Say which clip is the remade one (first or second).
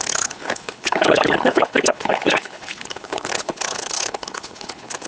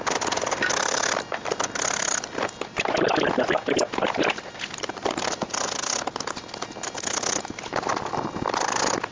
first